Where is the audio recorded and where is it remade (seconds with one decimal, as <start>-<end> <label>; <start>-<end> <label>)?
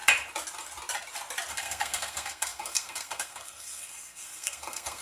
0.0-1.5 recorded; 1.5-5.0 remade